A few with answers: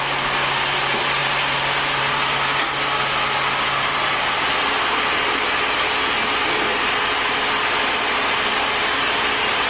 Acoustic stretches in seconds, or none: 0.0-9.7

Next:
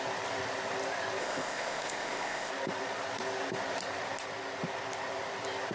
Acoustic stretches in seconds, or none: 0.0-1.2; 2.5-5.7